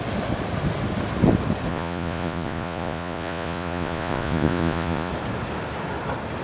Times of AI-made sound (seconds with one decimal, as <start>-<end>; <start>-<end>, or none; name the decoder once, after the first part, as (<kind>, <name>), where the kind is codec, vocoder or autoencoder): 1.7-5.1 (vocoder, Vocos)

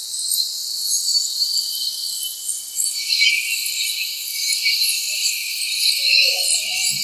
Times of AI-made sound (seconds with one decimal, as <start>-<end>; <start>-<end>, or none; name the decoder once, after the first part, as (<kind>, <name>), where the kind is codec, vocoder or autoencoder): 4.3-5.9 (vocoder, BigVGAN v2)